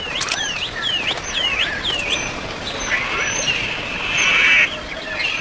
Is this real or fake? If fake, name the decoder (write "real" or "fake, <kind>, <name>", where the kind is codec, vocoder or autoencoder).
real